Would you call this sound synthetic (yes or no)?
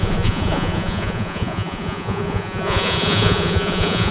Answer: yes